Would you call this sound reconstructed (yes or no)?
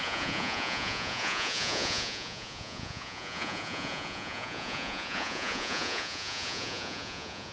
yes